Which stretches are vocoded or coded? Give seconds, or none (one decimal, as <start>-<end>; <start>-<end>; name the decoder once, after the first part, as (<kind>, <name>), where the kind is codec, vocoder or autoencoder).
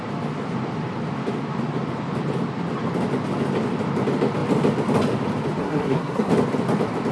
5.6-6.3 (codec, SNAC)